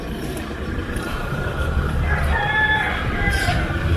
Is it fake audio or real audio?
fake